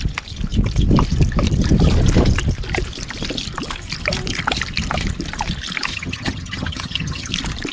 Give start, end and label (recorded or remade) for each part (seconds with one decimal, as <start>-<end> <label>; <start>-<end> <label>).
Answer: 0.0-5.9 recorded; 5.9-7.3 remade; 7.3-7.7 recorded